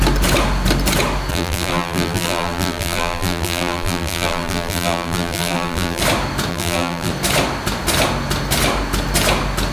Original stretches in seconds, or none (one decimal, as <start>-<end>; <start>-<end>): 0.0-1.3; 6.0-6.5; 7.1-9.7

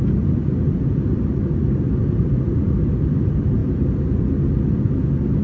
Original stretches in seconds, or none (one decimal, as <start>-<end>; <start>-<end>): 0.4-2.0; 3.6-5.4

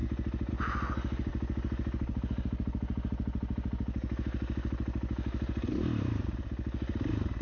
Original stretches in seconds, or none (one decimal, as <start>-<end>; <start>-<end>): 0.0-7.4

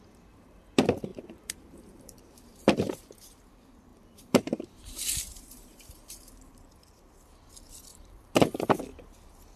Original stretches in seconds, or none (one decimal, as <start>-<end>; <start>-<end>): 0.0-1.1; 3.4-3.9; 6.8-7.9; 8.8-9.6

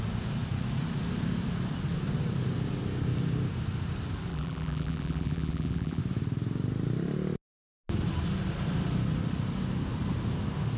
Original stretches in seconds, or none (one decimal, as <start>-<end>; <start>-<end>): 0.0-4.3; 6.0-10.8